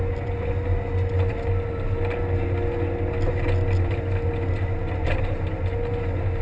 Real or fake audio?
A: real